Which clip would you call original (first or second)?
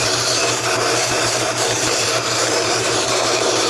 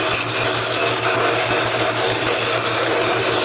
second